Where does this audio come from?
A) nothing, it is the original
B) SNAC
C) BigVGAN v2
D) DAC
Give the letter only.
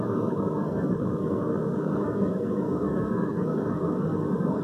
B